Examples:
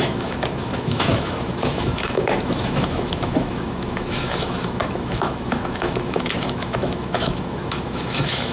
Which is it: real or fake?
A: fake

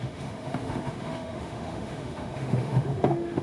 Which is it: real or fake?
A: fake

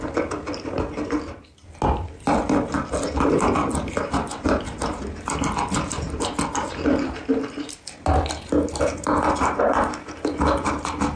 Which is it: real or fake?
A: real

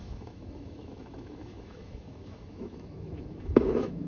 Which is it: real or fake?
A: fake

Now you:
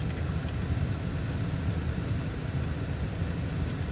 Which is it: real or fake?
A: real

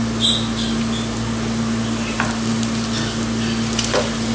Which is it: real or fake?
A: real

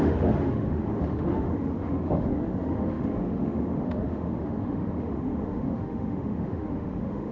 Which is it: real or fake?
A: fake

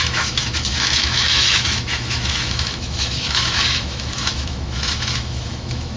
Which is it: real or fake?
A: fake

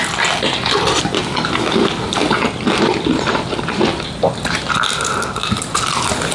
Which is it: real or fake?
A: real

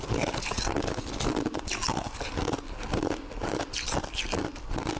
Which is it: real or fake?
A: real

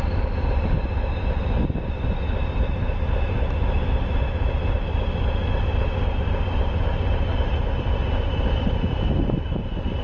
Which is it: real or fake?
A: real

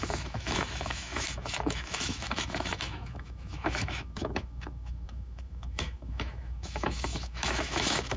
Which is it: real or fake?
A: fake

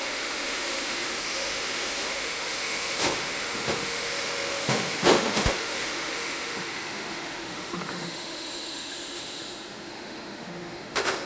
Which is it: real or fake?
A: fake